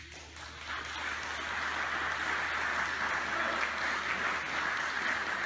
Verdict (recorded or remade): recorded